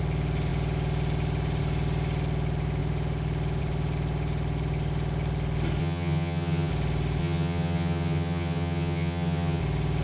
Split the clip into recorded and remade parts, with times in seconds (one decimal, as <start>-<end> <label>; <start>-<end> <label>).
0.0-5.8 recorded; 5.8-6.7 remade; 6.7-7.2 recorded; 7.2-9.6 remade; 9.6-10.0 recorded